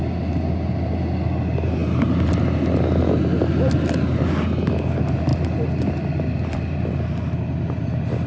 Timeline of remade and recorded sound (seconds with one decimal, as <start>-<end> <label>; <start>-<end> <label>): 0.0-8.3 recorded